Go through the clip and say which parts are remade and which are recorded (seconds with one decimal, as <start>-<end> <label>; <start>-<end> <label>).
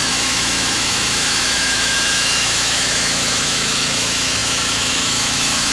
0.0-5.7 remade